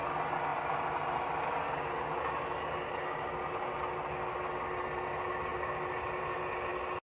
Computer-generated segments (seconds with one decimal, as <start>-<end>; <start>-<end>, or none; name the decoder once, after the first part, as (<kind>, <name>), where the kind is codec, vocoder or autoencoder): 0.5-4.8 (vocoder, BigVGAN v2); 5.5-6.2; 6.7-7.2